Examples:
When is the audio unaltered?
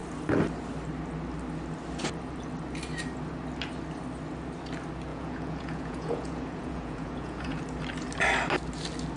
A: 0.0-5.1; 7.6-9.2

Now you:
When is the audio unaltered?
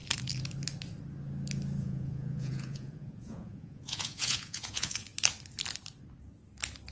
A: 0.0-1.8; 5.1-6.9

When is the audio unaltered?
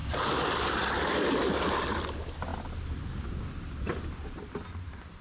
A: 0.0-5.2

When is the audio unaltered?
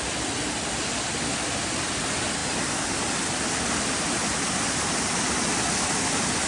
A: 0.0-6.5